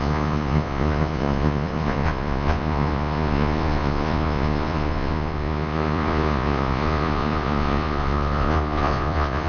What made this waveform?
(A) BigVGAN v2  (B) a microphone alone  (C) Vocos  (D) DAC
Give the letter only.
C